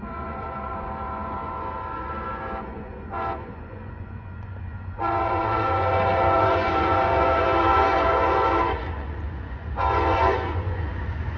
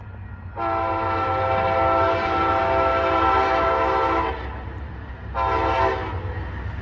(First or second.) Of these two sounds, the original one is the second